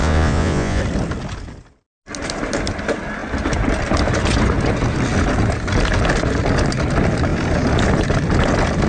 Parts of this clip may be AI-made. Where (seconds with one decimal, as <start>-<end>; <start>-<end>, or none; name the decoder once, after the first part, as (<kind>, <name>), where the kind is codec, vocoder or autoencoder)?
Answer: 0.0-0.8 (vocoder, Vocos)